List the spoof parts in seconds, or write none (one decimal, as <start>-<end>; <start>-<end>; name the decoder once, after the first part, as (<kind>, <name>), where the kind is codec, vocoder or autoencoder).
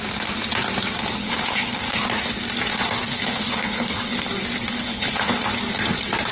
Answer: 1.2-2.0 (codec, HILCodec); 3.1-4.3; 4.7-5.5